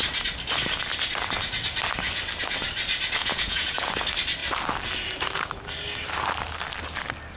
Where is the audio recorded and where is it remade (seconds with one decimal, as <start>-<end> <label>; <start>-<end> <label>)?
0.0-3.2 recorded; 3.2-3.9 remade; 3.9-7.4 recorded